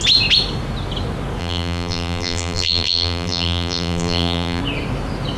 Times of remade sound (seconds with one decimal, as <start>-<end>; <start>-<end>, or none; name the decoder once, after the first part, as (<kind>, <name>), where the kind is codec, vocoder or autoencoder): 1.4-4.6 (vocoder, BigVGAN v2)